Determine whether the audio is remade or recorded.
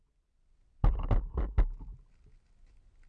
recorded